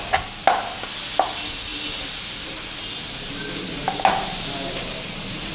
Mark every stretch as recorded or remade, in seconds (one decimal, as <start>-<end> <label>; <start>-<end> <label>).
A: 0.0-5.5 recorded